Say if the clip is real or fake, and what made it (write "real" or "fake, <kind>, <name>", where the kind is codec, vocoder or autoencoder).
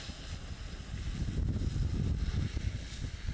real